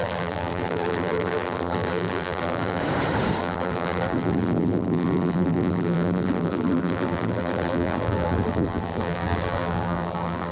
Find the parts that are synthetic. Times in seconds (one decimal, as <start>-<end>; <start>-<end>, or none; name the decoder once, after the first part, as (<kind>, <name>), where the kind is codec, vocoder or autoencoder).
0.0-2.8 (vocoder, BigVGAN v2); 3.4-10.5